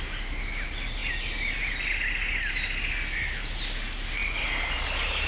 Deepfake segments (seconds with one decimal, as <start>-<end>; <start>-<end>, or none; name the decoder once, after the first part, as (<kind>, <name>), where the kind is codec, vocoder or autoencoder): none